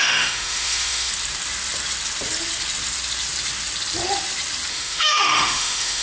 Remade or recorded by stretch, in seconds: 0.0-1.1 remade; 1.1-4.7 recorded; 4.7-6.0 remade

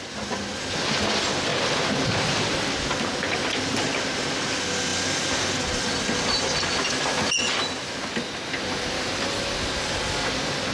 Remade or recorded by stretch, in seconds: 0.0-10.7 recorded

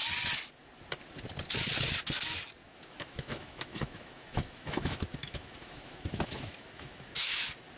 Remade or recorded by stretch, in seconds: 0.0-2.6 recorded; 2.6-7.3 remade; 7.3-7.8 recorded

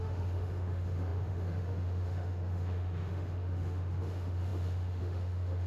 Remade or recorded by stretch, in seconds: 0.0-5.7 remade

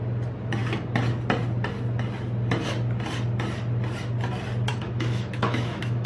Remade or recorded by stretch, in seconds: 0.0-4.7 recorded; 4.7-6.1 remade